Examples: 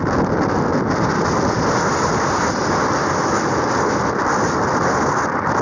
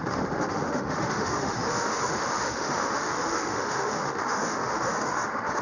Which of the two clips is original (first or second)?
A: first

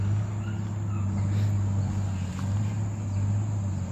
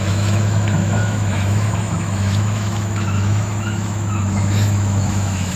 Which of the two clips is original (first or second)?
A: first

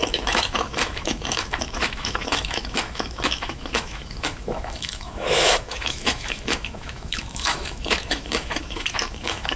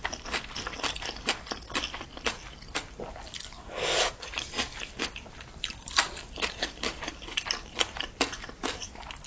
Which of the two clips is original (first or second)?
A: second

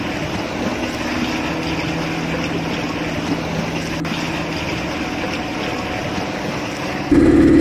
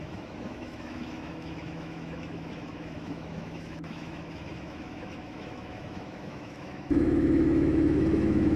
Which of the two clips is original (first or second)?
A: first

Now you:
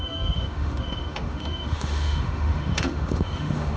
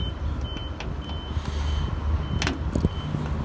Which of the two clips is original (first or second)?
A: second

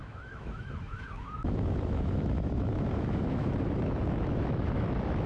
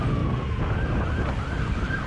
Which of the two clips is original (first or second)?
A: second